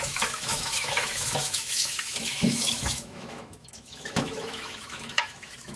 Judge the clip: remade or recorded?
remade